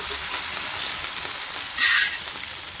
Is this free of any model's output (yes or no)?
yes